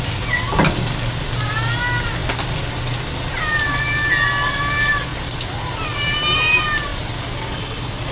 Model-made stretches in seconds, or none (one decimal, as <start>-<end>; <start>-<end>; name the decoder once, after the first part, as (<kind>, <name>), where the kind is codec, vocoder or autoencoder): none